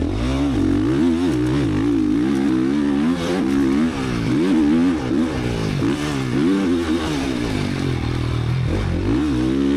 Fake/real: real